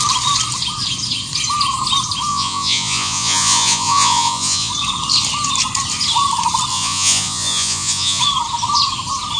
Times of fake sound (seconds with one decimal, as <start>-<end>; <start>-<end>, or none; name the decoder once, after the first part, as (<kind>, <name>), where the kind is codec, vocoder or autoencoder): 2.3-4.7 (vocoder, Vocos); 6.7-8.2